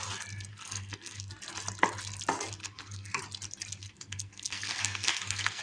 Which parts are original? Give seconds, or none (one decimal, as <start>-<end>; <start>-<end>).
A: 0.0-0.5; 1.3-2.6; 3.2-3.8